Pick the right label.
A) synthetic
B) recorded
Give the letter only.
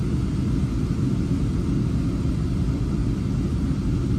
B